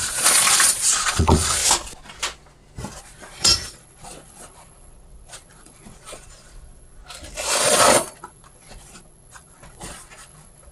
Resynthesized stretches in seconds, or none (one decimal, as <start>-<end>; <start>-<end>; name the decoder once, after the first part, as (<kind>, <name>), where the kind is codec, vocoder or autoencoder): 0.0-1.6 (vocoder, Vocos); 3.0-7.0; 7.6-10.7